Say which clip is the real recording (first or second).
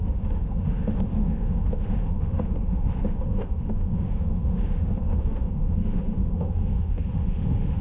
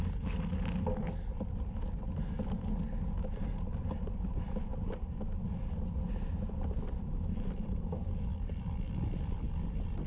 second